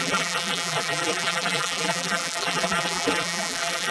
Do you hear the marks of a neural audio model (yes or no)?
yes